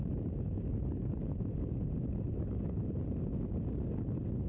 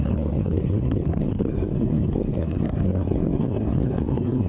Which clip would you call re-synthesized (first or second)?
second